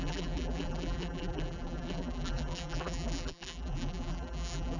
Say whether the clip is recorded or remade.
remade